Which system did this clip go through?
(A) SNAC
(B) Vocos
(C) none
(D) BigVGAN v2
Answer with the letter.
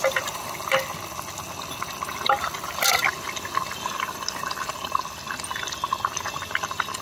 C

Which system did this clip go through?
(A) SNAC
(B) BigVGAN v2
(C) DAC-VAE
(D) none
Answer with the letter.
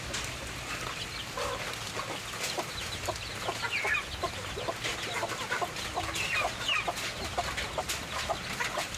D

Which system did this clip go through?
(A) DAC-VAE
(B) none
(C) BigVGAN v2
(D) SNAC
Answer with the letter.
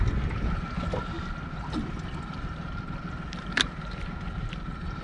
B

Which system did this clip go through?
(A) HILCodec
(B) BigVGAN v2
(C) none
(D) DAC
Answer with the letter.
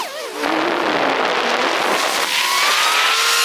C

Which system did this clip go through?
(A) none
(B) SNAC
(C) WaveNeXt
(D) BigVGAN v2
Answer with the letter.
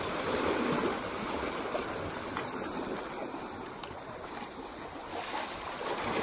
A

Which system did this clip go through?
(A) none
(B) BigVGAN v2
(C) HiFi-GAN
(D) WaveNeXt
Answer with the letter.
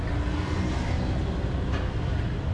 A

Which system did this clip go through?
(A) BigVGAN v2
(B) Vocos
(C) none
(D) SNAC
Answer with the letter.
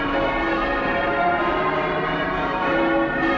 A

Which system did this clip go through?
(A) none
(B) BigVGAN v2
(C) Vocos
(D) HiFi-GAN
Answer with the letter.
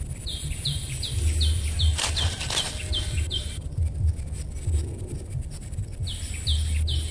A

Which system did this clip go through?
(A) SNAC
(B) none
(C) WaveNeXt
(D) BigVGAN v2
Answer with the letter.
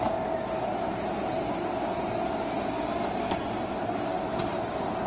B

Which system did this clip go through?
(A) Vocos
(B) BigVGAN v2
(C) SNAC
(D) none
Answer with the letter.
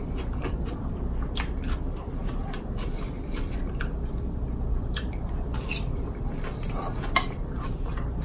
B